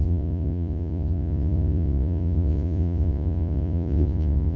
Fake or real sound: fake